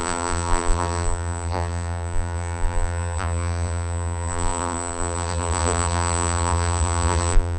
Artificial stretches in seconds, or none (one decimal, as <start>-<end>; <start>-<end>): 0.0-7.6

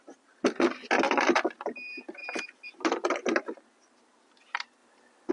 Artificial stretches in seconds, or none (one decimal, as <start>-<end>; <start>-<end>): none

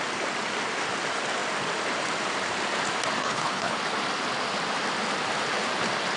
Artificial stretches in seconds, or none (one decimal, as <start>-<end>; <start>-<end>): 3.2-3.8

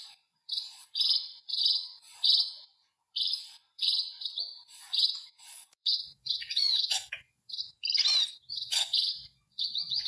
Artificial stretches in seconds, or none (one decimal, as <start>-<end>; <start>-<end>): 0.0-7.6; 8.3-10.1